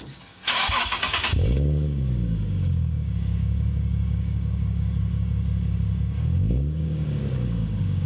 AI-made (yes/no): yes